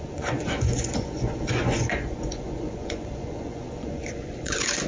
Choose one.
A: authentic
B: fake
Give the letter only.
B